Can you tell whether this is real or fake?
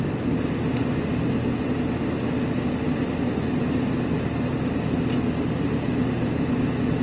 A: real